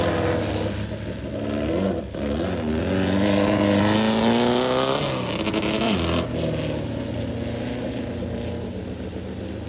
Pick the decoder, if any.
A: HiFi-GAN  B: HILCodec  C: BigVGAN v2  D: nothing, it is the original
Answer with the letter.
D